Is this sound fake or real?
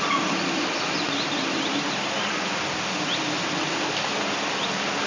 real